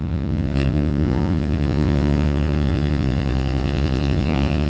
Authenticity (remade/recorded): remade